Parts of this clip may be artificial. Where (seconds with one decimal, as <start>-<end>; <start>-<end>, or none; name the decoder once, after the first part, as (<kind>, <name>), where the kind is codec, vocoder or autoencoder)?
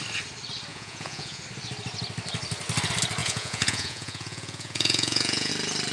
0.7-1.4 (vocoder, Vocos); 3.2-5.5